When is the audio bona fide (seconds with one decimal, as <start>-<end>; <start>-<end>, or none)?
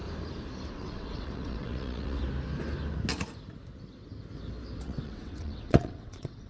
0.0-0.7; 2.2-4.8